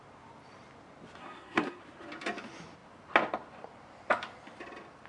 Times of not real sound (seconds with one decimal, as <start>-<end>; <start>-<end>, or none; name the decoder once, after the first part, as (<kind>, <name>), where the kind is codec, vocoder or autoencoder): 1.2-1.8 (codec, SNAC)